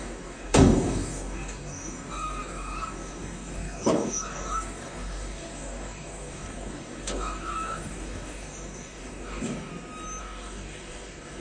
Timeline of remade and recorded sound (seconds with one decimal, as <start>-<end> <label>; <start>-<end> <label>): 0.0-9.7 remade; 9.7-10.2 recorded; 10.2-11.4 remade